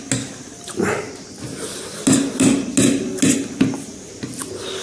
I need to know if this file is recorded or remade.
recorded